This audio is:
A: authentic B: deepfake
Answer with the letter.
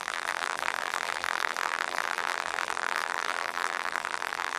B